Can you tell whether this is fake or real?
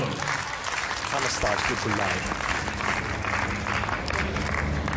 real